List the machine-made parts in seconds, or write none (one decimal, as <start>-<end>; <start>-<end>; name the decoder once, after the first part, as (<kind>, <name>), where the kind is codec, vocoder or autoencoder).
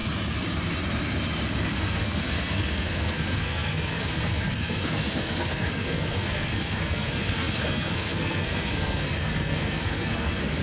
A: 1.7-10.6 (codec, SNAC)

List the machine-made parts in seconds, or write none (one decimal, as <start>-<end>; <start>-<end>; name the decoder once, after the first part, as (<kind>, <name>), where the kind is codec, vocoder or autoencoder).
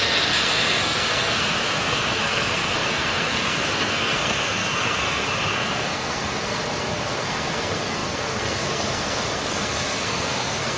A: 0.0-10.8 (codec, SNAC)